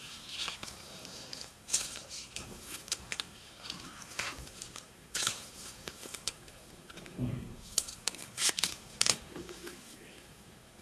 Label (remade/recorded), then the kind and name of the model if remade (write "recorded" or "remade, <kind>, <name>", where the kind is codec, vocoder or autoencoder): remade, codec, SNAC